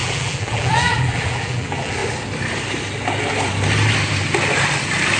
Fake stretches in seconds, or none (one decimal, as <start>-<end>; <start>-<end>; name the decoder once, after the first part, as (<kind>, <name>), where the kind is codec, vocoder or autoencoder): 0.0-2.0 (vocoder, BigVGAN v2)